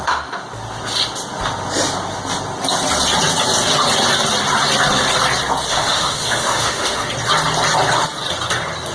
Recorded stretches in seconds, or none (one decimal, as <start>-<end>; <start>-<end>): 0.0-5.7; 7.1-8.9